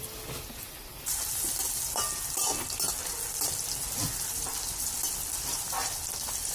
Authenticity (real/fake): real